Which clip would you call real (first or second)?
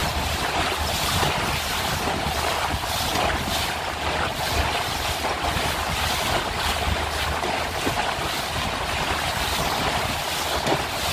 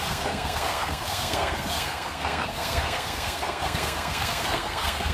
first